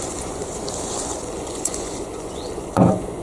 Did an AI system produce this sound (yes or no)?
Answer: yes